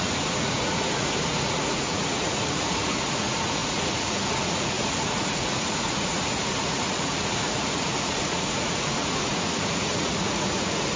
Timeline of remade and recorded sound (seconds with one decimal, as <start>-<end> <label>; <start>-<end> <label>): 0.0-11.0 remade